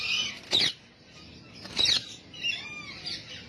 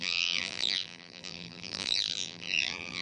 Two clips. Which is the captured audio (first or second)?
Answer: first